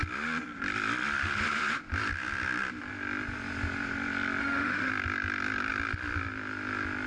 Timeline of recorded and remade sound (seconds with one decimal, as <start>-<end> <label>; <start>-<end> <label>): 0.0-4.4 recorded; 4.4-4.9 remade; 4.9-7.1 recorded

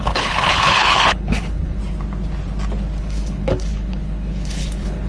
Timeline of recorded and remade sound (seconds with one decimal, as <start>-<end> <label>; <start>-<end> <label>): 0.0-1.8 remade; 1.8-3.0 recorded; 3.0-5.1 remade

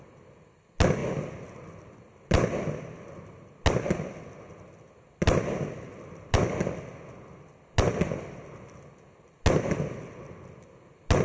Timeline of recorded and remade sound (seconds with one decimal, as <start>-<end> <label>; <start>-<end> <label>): 0.0-1.0 recorded; 1.0-3.3 remade; 3.3-11.2 recorded

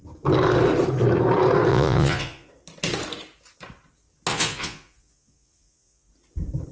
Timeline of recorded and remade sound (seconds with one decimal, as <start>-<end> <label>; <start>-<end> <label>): 0.0-1.7 recorded; 1.7-2.5 remade; 2.5-4.3 recorded; 4.3-6.1 remade; 6.1-6.7 recorded

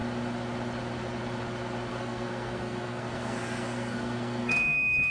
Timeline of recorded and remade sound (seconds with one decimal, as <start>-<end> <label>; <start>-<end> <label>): 0.0-1.9 recorded; 1.9-5.1 remade

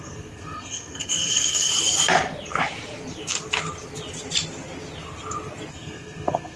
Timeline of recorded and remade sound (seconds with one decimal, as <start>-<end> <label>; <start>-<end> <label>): 0.0-1.7 remade; 1.7-5.7 recorded; 5.7-6.6 remade